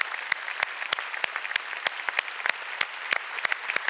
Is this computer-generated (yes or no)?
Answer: no